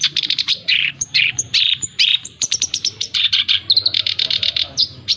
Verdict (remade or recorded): remade